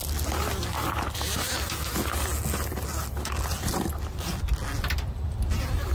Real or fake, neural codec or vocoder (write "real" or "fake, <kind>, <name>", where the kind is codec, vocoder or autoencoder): real